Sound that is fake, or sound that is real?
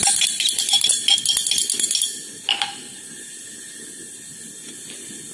real